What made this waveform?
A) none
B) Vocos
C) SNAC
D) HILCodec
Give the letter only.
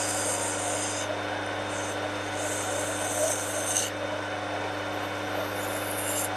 A